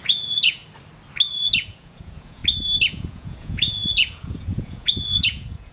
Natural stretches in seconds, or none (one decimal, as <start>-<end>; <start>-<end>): 0.6-1.3; 2.4-2.9